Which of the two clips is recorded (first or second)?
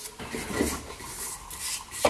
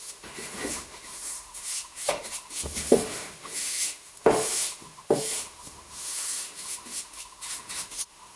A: first